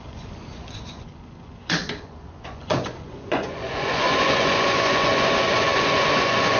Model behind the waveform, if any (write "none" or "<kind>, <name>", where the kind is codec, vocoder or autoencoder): vocoder, Vocos